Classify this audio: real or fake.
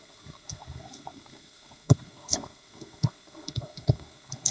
fake